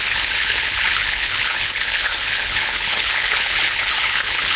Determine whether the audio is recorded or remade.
remade